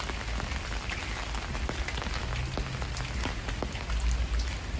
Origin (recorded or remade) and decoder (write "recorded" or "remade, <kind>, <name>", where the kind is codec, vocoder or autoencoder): recorded